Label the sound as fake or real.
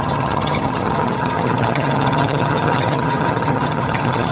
fake